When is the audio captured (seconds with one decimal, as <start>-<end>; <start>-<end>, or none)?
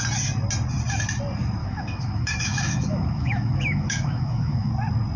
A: 0.0-1.6; 4.7-5.2